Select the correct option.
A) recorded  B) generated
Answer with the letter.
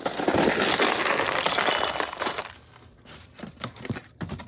A